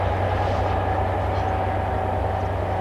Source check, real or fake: real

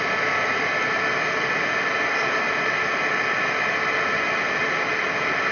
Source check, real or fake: real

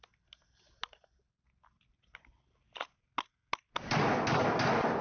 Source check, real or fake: real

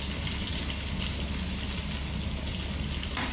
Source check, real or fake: real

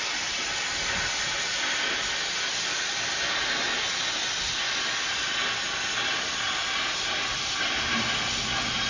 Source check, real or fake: real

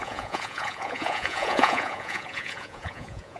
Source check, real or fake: fake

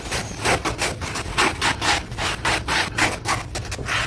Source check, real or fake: real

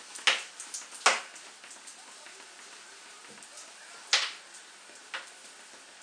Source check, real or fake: real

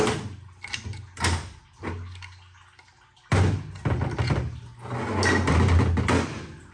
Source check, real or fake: real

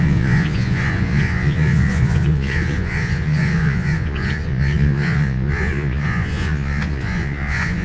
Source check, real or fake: fake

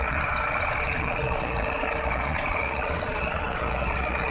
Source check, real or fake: fake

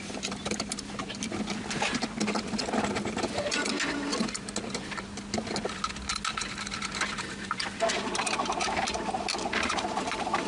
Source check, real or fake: real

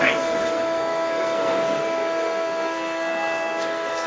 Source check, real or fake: fake